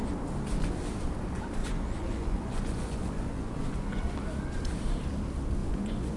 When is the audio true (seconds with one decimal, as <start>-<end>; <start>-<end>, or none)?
0.0-1.6; 4.0-5.6